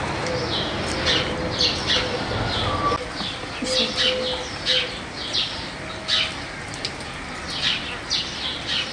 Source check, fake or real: real